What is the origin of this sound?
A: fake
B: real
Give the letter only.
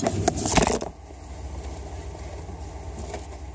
B